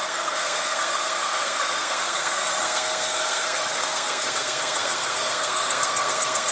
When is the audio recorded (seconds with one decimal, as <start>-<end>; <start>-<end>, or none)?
none